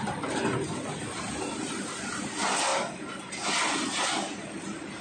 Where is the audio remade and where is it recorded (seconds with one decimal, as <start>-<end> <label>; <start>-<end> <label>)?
0.0-5.0 recorded

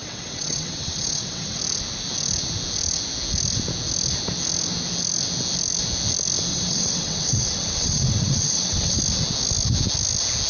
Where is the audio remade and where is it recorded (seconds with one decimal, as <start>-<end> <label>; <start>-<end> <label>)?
0.0-1.6 remade; 1.6-6.5 recorded; 6.5-9.0 remade; 9.0-10.5 recorded

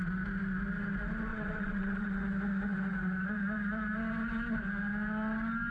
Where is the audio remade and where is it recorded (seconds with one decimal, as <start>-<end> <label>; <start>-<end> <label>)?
0.0-1.3 recorded; 1.3-2.2 remade; 2.2-5.7 recorded

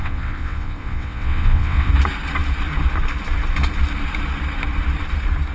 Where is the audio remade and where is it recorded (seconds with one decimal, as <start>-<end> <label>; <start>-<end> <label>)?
0.0-1.9 remade; 1.9-5.5 recorded